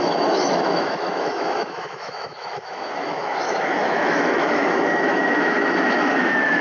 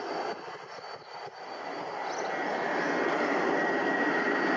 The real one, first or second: second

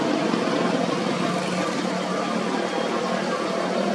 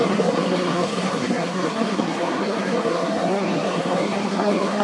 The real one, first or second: first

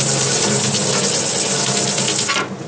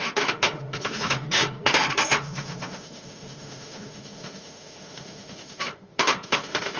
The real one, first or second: first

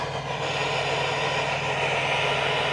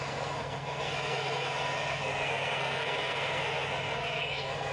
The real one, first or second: first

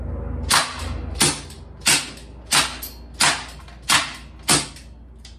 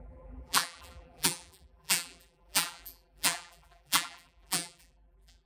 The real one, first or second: first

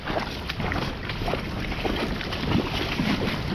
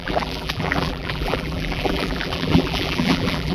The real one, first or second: first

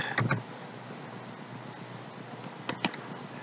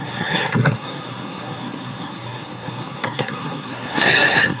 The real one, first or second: first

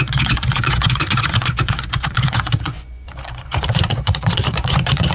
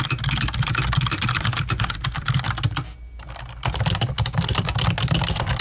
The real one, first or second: second